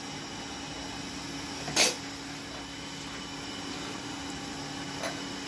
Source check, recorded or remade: recorded